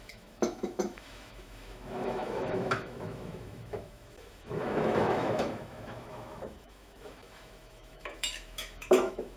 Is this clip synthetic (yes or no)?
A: yes